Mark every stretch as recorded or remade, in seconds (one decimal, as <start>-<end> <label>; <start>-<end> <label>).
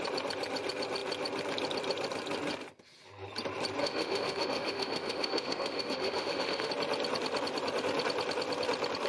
0.0-3.8 recorded; 3.8-6.7 remade; 6.7-9.1 recorded